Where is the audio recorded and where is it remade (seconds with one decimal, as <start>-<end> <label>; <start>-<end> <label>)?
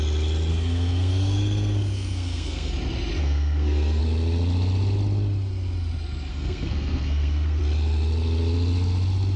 0.0-0.5 recorded; 0.5-2.7 remade; 2.7-3.2 recorded; 3.2-4.0 remade; 4.0-6.3 recorded; 6.3-7.6 remade; 7.6-9.4 recorded